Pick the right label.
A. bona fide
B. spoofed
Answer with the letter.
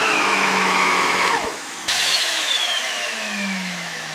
B